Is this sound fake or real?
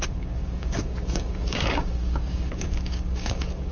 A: fake